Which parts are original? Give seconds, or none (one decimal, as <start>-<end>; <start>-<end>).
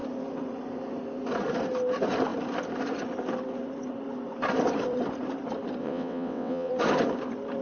0.0-5.8; 6.7-7.6